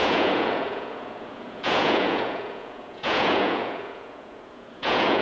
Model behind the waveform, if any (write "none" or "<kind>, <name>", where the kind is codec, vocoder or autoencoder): vocoder, Vocos